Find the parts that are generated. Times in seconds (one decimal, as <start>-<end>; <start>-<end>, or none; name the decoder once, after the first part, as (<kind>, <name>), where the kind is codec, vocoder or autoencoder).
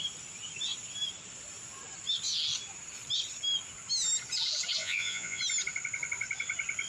4.8-5.4 (vocoder, Vocos)